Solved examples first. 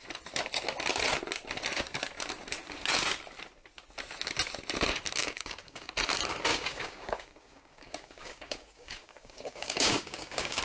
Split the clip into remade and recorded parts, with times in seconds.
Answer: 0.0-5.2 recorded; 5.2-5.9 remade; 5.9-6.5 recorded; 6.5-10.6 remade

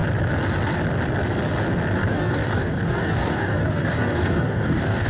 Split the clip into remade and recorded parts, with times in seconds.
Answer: 0.0-2.0 recorded; 2.0-5.1 remade

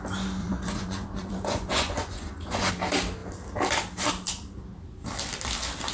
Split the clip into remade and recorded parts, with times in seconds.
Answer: 0.0-0.4 recorded; 0.4-2.7 remade; 2.7-5.9 recorded

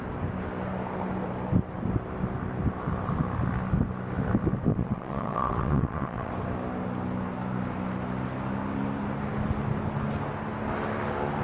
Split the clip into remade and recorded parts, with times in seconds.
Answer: 0.0-4.7 recorded; 4.7-6.3 remade; 6.3-11.4 recorded

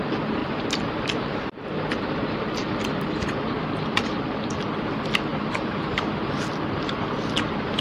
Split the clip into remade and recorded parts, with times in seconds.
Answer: 0.0-0.4 recorded; 0.4-1.5 remade; 1.5-5.3 recorded; 5.3-6.4 remade; 6.4-7.8 recorded

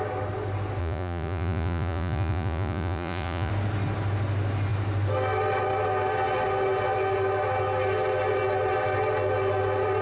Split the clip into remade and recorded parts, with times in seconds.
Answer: 0.0-0.8 recorded; 0.8-3.5 remade; 3.5-10.0 recorded